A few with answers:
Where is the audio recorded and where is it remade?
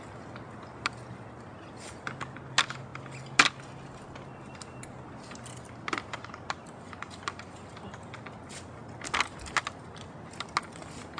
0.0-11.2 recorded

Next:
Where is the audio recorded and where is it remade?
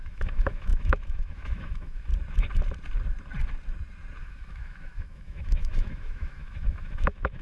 0.0-2.1 remade; 2.1-4.2 recorded; 4.2-7.4 remade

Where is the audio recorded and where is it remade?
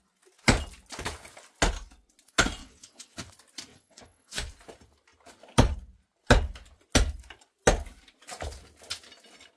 0.0-2.6 recorded; 2.6-3.3 remade; 3.3-3.7 recorded; 3.7-4.5 remade; 4.5-9.6 recorded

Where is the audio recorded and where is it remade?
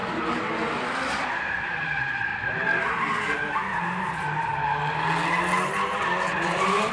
0.0-1.1 recorded; 1.1-2.3 remade; 2.3-6.4 recorded; 6.4-6.9 remade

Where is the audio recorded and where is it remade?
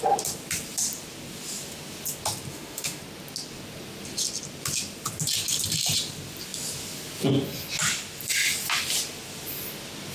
0.0-2.5 recorded; 2.5-3.0 remade; 3.0-10.1 recorded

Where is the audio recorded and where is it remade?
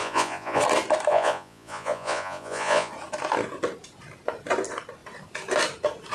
0.0-0.6 remade; 0.6-1.1 recorded; 1.1-2.9 remade; 2.9-6.1 recorded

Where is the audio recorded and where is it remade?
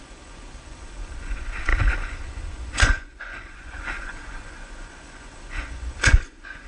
0.0-6.7 remade